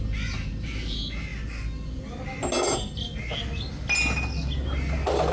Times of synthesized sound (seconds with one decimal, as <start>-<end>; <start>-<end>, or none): none